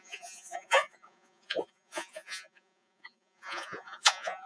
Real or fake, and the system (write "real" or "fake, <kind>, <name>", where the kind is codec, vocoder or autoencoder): fake, vocoder, Vocos